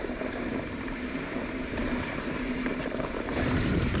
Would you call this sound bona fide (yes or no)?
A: no